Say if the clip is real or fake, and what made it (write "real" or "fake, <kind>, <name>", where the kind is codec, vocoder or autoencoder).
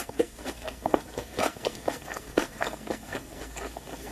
fake, codec, SNAC